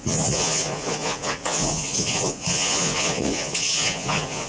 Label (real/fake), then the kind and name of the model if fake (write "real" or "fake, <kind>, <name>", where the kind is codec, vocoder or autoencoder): fake, vocoder, Vocos